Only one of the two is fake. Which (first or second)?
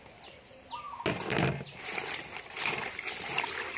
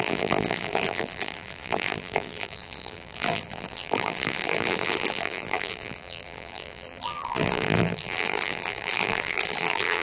second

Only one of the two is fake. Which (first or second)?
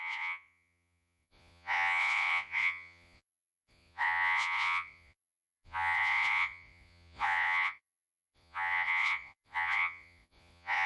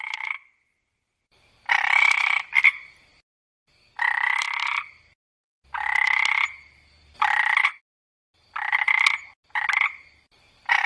first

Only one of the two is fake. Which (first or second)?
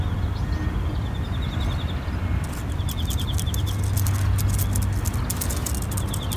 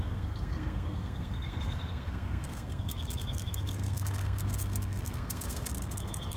second